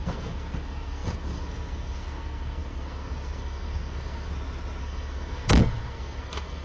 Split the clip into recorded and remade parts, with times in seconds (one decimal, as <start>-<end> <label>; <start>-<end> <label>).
0.0-4.3 remade; 4.3-4.8 recorded; 4.8-6.6 remade